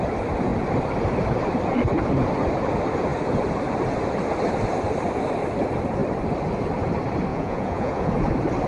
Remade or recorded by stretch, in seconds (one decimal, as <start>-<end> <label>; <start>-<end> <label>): 0.0-7.3 recorded; 7.3-8.1 remade; 8.1-8.7 recorded